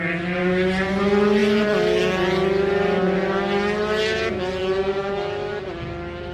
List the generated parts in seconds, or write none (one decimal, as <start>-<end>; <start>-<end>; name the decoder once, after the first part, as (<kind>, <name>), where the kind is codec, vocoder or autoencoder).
4.6-5.5 (autoencoder, DAC-VAE)